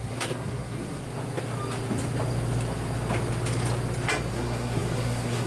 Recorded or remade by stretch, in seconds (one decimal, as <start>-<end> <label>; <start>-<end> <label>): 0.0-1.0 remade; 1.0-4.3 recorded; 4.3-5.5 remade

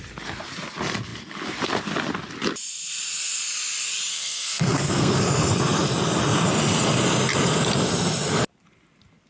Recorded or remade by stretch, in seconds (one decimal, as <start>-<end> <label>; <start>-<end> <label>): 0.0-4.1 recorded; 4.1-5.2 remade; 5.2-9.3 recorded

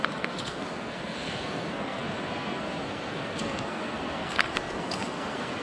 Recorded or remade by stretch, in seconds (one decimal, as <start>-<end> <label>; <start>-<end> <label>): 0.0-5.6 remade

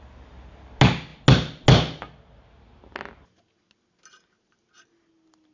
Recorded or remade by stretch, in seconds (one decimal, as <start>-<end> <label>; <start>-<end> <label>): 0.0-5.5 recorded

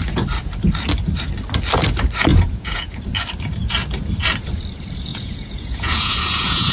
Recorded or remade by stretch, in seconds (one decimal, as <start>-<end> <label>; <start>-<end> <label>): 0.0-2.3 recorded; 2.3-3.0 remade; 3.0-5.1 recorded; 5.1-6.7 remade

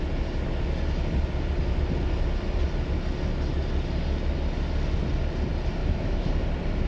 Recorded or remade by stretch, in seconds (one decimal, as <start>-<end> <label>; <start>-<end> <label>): 0.0-5.8 recorded; 5.8-6.3 remade; 6.3-6.9 recorded

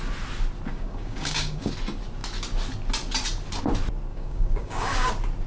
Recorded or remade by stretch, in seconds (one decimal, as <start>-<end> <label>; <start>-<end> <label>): 0.0-0.7 recorded; 0.7-1.7 remade; 1.7-4.1 recorded; 4.1-5.1 remade; 5.1-5.5 recorded